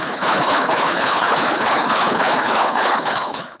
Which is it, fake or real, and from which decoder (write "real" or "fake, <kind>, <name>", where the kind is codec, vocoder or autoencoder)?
fake, codec, HILCodec